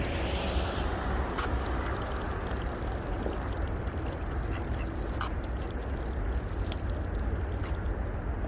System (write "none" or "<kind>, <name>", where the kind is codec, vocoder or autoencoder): none